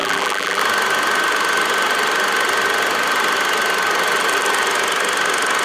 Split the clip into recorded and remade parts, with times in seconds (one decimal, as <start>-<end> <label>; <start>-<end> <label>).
0.0-0.6 remade; 0.6-5.6 recorded